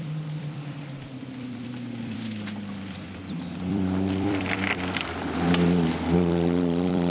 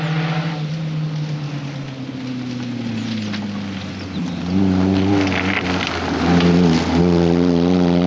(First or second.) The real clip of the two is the second